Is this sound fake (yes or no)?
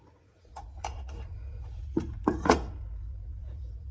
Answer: yes